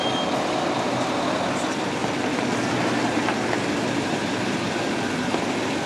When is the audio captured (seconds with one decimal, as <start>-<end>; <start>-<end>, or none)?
2.0-3.5